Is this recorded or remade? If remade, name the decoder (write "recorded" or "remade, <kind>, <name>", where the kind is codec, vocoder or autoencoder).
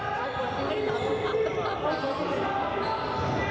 recorded